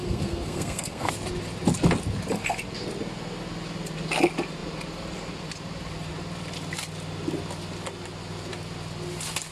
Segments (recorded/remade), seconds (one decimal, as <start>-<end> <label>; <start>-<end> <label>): 0.0-1.1 remade; 1.1-9.5 recorded